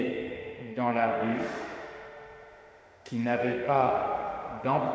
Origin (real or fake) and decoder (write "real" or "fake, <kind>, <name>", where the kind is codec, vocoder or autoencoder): fake, autoencoder, DAC-VAE